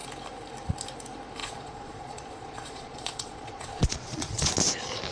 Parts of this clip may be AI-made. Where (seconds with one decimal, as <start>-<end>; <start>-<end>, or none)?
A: 1.4-4.5